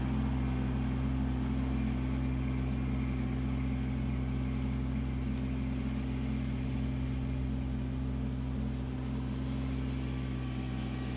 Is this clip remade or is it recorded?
recorded